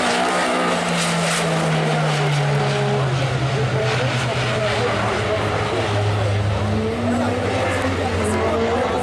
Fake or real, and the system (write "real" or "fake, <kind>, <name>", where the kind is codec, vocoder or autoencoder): real